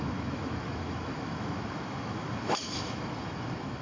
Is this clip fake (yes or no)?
yes